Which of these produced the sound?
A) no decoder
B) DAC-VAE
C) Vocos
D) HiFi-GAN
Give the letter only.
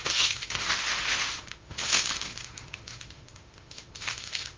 B